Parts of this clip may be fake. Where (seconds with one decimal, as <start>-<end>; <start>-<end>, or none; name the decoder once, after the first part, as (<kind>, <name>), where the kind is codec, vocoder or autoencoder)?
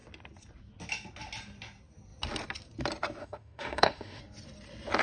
3.2-4.2 (autoencoder, DAC-VAE)